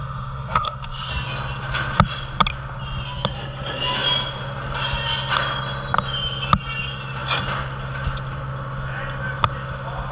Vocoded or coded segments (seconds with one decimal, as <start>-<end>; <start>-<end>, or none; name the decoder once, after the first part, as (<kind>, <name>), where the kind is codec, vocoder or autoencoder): 0.0-1.1 (codec, SNAC)